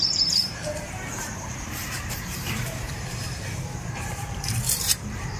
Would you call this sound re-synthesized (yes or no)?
yes